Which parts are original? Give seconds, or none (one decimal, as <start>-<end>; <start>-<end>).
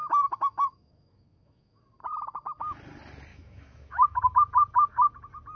1.8-3.3; 4.2-5.6